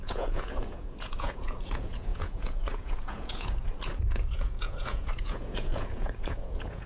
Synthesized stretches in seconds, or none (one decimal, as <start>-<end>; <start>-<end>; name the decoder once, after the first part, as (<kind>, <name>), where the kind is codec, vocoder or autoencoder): 0.0-6.9 (vocoder, Vocos)